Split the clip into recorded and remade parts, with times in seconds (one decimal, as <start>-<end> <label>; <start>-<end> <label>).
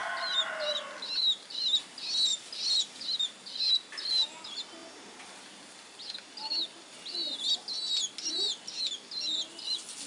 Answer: 0.0-10.1 recorded